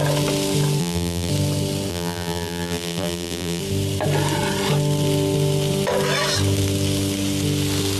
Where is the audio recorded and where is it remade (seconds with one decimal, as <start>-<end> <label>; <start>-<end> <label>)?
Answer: 0.0-0.8 recorded; 0.8-1.3 remade; 1.3-1.9 recorded; 1.9-3.6 remade; 3.6-8.0 recorded